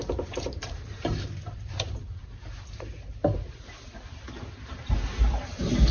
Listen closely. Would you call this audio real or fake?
fake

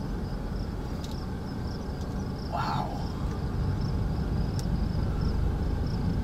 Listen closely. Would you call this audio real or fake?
real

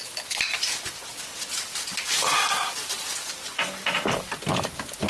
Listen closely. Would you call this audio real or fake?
real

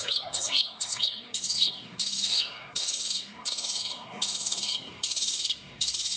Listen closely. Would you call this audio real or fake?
fake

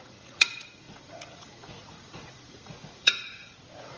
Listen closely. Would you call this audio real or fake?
fake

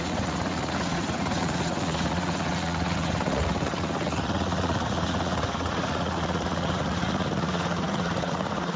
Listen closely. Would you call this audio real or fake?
fake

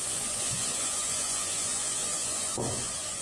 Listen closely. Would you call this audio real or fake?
fake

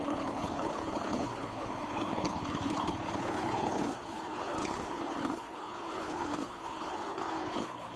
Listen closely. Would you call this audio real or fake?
fake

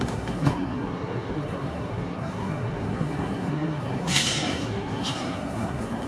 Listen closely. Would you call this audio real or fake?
fake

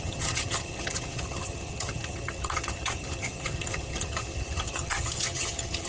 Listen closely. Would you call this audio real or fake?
fake